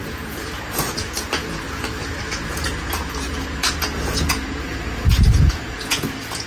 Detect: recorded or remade remade